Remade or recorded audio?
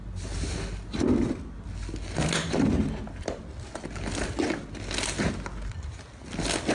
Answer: recorded